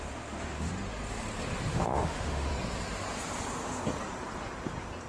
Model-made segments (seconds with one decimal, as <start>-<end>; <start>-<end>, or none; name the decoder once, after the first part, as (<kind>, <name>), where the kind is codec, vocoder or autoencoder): 0.0-0.7 (autoencoder, DAC-VAE); 1.7-2.5